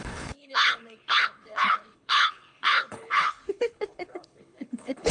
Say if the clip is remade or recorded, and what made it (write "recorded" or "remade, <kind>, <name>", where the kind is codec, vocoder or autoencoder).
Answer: remade, codec, HILCodec